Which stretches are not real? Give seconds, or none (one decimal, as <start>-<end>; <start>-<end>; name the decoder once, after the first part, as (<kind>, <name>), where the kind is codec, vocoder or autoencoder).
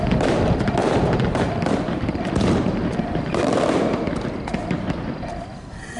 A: 0.8-1.6 (vocoder, BigVGAN v2); 2.1-5.3